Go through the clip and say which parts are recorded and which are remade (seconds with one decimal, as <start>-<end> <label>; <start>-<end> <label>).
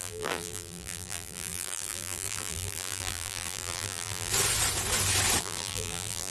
0.0-4.3 remade; 4.3-5.4 recorded; 5.4-6.3 remade